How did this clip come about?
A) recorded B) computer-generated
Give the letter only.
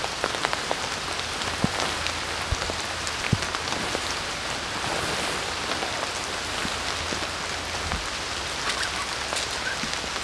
A